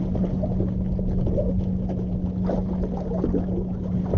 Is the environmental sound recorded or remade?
recorded